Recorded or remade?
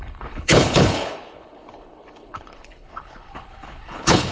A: remade